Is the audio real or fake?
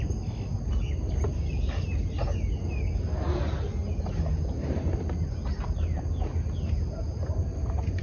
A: real